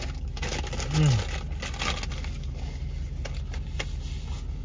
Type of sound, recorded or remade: recorded